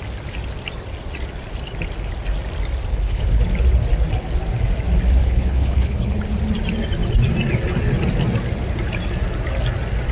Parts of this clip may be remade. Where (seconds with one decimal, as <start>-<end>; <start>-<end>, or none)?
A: 2.9-3.4; 5.2-6.2